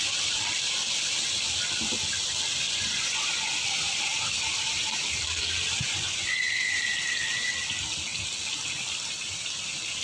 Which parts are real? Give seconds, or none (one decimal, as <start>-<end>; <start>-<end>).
0.0-2.6; 3.5-5.9; 6.8-10.0